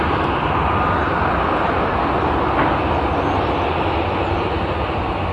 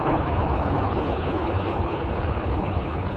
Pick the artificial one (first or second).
second